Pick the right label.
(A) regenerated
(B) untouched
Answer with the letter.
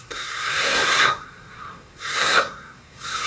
A